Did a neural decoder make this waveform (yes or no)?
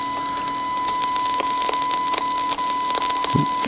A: no